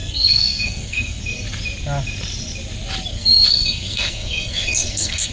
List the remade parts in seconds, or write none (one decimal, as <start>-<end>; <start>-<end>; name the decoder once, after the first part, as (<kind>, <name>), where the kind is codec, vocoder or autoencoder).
0.0-1.2 (codec, SNAC); 3.1-5.3